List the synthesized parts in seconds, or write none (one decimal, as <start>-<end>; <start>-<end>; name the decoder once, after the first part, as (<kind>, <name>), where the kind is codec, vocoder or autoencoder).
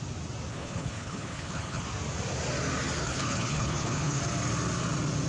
0.5-1.8 (codec, HILCodec); 3.0-4.2